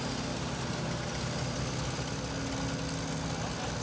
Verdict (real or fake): real